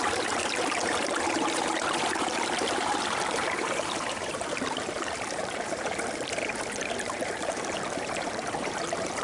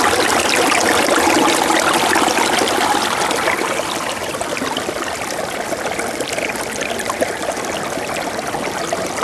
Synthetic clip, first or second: first